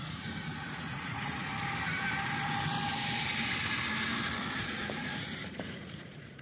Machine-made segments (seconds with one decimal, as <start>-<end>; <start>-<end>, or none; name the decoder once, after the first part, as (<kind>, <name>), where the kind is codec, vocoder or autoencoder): 0.0-1.5 (vocoder, Vocos); 4.6-6.4